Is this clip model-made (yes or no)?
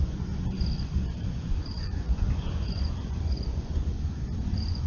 yes